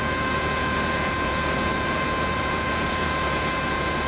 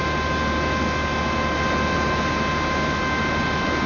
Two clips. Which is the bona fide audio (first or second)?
second